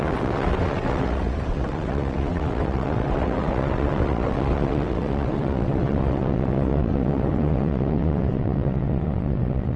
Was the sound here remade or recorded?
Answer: remade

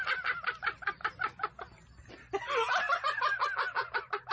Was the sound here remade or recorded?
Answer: recorded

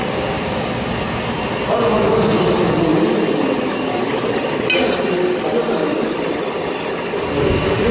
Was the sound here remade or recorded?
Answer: recorded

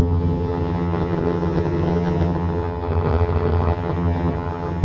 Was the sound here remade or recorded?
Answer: remade